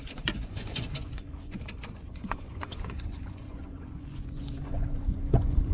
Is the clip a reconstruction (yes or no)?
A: yes